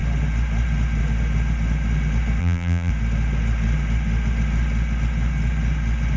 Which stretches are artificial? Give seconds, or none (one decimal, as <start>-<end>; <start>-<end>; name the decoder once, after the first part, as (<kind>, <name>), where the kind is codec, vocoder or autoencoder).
2.4-2.9 (vocoder, BigVGAN v2)